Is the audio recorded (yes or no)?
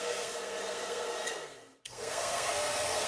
no